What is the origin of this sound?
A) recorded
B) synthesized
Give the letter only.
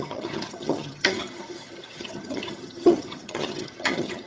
B